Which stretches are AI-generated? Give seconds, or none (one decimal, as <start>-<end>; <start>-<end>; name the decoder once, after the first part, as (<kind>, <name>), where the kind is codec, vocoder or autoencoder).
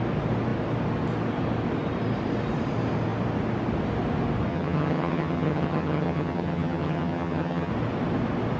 4.5-7.7 (vocoder, HiFi-GAN)